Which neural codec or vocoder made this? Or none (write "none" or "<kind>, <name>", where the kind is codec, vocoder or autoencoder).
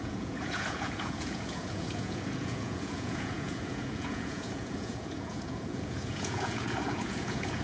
vocoder, Vocos